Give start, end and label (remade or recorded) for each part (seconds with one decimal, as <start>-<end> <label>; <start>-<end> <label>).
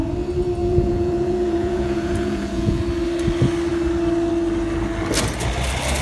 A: 0.0-0.6 recorded; 0.6-2.8 remade; 2.8-6.0 recorded